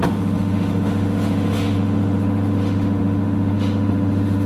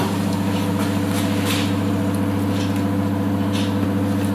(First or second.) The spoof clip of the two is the first